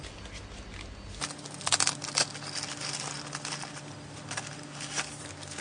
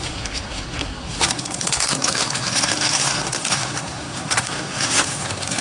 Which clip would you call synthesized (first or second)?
second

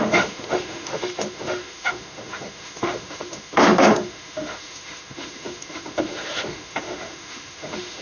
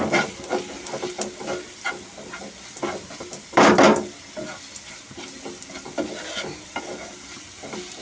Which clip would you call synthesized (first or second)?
first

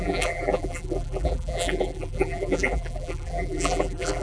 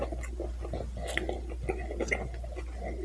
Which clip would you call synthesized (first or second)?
first